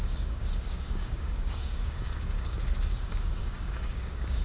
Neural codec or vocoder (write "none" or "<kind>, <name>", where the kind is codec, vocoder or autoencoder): codec, DAC